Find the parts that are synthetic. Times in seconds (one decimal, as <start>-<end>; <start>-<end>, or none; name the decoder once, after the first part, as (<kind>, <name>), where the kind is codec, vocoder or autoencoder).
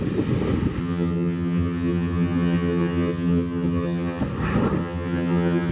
0.8-4.2 (vocoder, HiFi-GAN); 4.8-5.7